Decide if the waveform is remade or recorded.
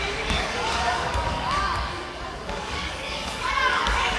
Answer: remade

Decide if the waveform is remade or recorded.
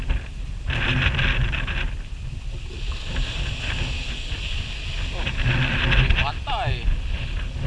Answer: recorded